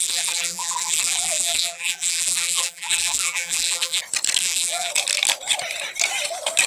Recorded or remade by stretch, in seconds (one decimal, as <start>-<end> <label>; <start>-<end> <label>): 0.0-4.0 remade; 4.0-4.4 recorded; 4.4-4.9 remade; 4.9-6.7 recorded